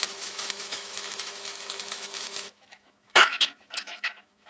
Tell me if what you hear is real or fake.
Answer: fake